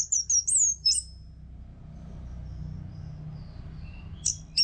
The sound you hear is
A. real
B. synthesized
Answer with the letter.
A